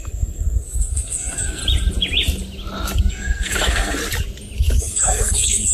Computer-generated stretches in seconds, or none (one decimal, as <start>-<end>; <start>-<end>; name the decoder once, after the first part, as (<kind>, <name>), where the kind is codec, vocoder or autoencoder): 0.0-1.6 (codec, SNAC); 3.1-4.0; 4.8-5.7